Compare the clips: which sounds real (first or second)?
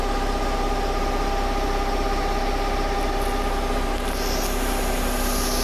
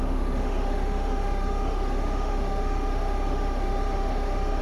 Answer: first